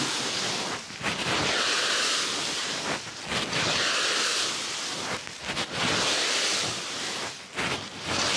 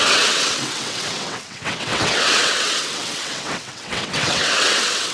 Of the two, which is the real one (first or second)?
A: first